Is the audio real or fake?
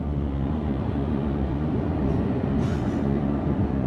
fake